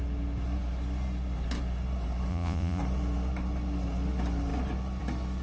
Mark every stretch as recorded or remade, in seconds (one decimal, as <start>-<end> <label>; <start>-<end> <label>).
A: 0.0-2.3 recorded; 2.3-2.8 remade; 2.8-5.4 recorded